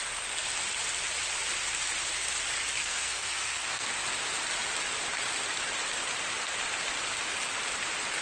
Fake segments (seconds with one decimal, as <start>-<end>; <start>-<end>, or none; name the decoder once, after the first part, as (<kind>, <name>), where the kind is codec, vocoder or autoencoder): 2.8-4.0 (codec, SNAC)

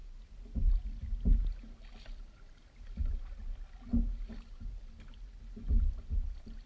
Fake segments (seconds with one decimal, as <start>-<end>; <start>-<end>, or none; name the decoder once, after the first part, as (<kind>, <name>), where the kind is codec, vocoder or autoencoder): none

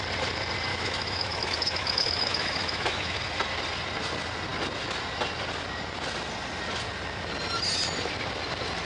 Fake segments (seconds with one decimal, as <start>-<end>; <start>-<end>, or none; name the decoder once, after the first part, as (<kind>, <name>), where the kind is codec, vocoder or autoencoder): 0.7-3.2 (autoencoder, DAC-VAE)

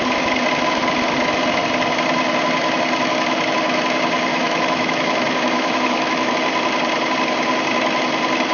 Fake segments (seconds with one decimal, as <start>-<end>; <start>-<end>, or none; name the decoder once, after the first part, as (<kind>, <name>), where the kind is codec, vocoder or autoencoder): 4.3-6.3 (autoencoder, DAC-VAE)

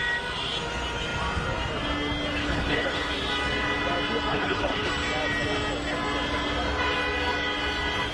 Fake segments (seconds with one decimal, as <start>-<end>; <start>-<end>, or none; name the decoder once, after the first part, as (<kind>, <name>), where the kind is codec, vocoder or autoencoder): 2.4-3.1 (codec, HILCodec); 4.3-4.9

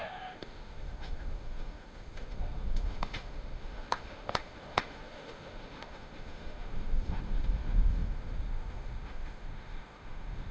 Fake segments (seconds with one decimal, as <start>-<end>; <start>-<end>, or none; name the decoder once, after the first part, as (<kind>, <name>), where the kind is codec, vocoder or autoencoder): 0.0-10.5 (autoencoder, DAC-VAE)